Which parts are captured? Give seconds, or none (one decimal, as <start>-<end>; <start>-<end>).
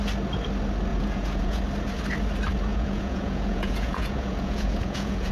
0.0-0.9; 1.6-2.7